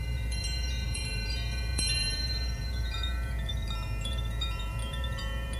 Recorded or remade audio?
remade